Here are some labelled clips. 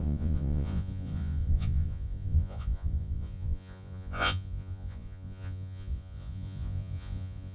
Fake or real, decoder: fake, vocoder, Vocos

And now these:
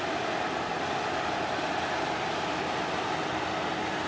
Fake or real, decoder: real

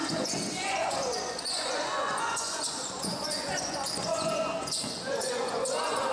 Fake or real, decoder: fake, vocoder, Vocos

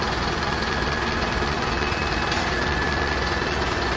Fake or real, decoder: fake, vocoder, Vocos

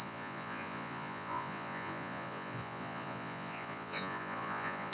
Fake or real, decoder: fake, vocoder, Vocos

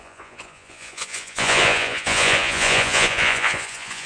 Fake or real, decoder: fake, vocoder, Vocos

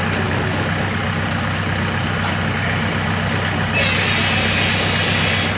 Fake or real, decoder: real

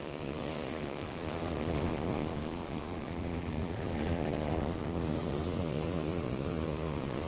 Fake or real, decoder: fake, vocoder, Vocos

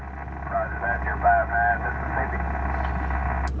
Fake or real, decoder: real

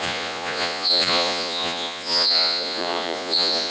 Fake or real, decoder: fake, vocoder, Vocos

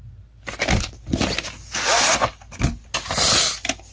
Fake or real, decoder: real